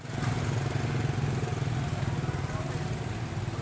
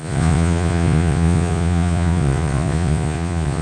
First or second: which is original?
first